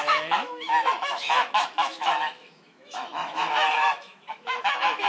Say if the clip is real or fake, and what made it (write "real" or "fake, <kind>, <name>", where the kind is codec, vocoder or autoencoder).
fake, autoencoder, DAC-VAE